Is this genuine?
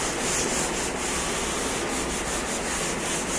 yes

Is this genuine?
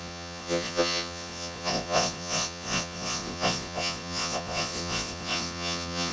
no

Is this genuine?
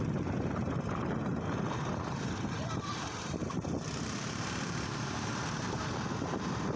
no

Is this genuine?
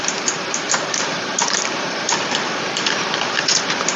no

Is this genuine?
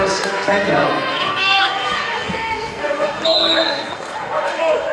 no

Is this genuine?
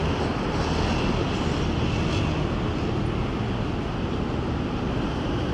yes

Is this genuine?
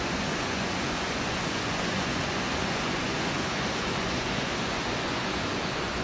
no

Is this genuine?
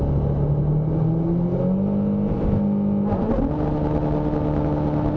yes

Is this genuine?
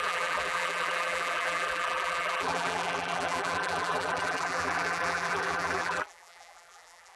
no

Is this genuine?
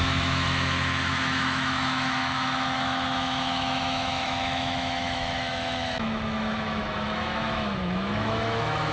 no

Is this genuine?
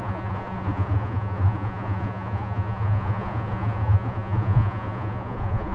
no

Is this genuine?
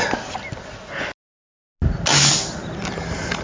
yes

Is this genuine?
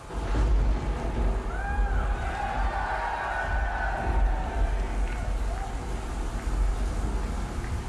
yes